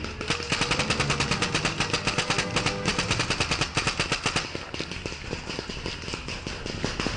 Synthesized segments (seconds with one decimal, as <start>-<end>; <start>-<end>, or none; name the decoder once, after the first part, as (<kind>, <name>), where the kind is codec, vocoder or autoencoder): none